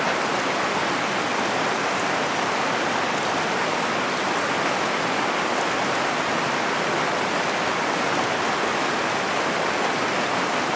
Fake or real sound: real